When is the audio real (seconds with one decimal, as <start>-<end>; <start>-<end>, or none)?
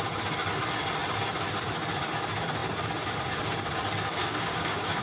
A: 0.0-4.2